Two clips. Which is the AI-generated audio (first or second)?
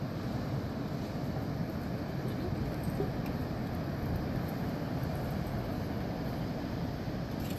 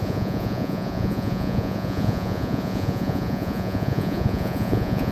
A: second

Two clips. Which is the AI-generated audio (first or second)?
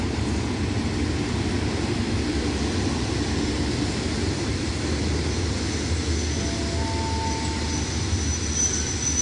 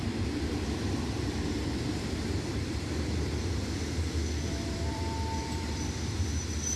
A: second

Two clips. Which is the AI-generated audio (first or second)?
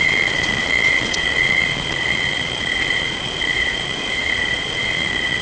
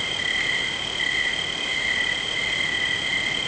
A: first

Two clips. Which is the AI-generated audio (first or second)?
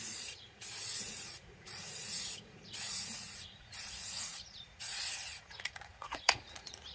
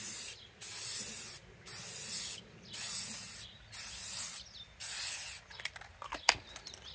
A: first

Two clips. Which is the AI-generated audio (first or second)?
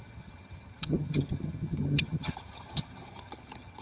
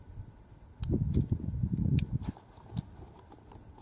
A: first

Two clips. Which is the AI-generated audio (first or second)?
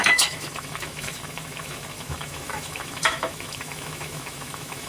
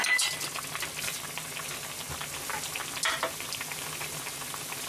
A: first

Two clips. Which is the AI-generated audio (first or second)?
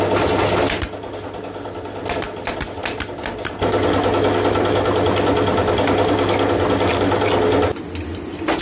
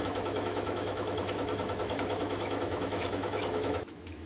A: second